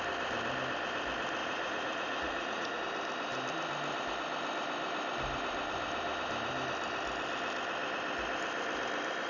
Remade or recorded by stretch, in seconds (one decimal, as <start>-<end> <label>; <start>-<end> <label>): 0.0-1.4 recorded; 1.4-2.8 remade; 2.8-9.3 recorded